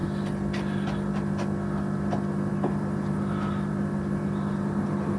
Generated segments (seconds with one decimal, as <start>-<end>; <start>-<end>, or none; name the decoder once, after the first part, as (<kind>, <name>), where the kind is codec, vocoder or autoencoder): none